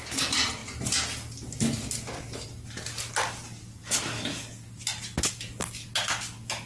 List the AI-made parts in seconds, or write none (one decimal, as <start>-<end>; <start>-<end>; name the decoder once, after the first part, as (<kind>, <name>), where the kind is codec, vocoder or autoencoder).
none